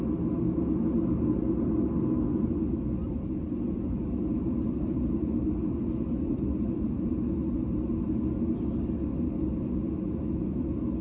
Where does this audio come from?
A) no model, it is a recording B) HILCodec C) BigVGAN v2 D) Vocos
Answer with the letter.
A